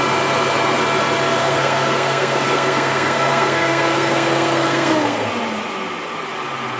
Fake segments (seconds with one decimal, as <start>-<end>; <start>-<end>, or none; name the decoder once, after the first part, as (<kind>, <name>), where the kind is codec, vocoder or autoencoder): 1.4-5.3 (codec, SNAC)